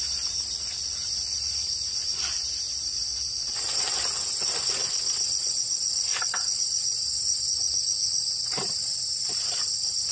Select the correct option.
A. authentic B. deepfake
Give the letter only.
A